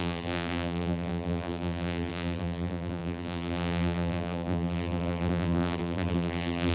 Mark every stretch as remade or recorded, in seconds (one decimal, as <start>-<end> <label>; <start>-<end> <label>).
0.0-6.7 remade